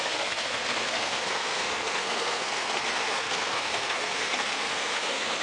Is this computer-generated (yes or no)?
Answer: yes